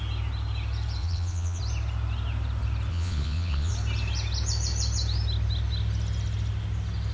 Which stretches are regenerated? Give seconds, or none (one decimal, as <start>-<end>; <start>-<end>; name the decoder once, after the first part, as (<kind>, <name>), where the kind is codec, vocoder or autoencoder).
1.0-1.6 (vocoder, Vocos); 2.9-3.7